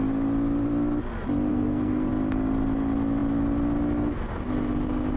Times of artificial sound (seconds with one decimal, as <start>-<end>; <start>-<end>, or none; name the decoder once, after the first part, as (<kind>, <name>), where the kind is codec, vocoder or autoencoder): 1.5-2.1 (codec, SNAC)